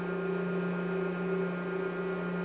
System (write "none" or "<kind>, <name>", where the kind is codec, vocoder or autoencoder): none